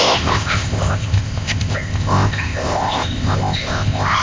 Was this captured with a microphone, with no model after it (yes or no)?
no